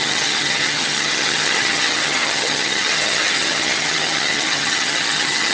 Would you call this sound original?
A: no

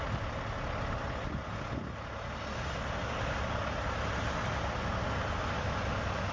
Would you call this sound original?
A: yes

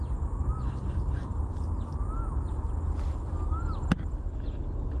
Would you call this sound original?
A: yes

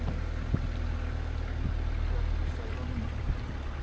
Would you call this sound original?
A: yes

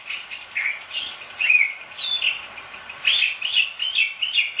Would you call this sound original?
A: no